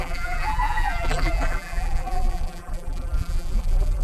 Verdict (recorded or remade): remade